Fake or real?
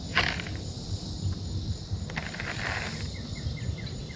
real